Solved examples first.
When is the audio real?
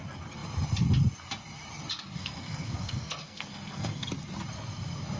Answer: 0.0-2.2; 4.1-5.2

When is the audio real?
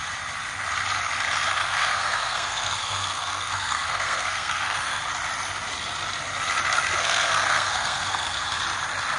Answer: 0.0-1.6; 5.0-7.0; 8.6-9.2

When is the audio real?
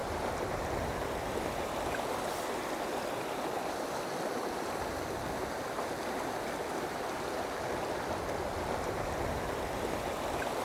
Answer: 0.6-10.6